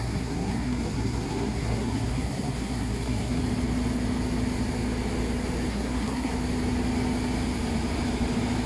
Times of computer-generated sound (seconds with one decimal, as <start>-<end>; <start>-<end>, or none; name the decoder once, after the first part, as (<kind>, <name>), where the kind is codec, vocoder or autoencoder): 0.0-3.4 (codec, SNAC); 5.7-6.3